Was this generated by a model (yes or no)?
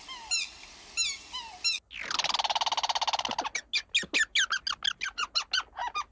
no